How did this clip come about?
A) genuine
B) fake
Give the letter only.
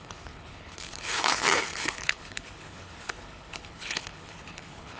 B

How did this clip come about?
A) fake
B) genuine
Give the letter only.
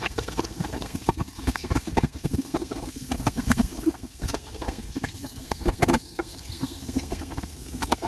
A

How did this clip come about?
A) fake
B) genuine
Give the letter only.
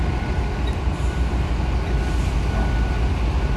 B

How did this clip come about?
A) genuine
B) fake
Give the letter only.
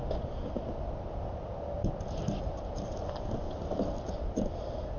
A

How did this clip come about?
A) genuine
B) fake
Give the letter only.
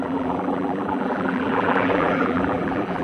B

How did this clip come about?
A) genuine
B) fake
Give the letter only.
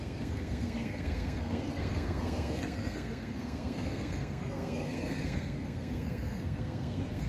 B